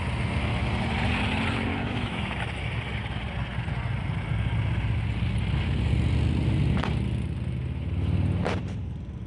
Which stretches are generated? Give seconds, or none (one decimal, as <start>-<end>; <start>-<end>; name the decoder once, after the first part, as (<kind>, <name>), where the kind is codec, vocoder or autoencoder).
1.7-2.3 (autoencoder, DAC-VAE)